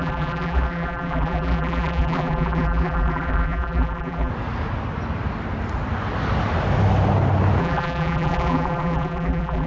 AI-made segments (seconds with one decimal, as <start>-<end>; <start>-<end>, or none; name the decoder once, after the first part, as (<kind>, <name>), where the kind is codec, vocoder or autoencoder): 0.0-4.3 (vocoder, BigVGAN v2); 7.6-9.7